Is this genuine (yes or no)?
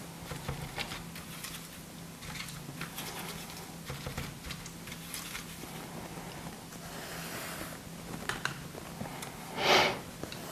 yes